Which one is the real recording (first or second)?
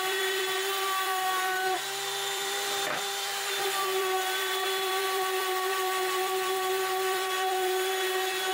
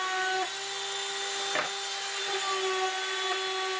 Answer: second